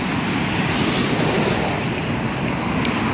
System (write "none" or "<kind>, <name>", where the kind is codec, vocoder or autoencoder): none